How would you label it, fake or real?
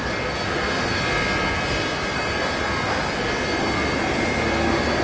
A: real